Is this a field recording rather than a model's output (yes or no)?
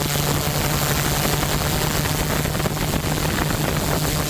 yes